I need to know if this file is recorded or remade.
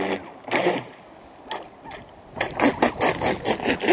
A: recorded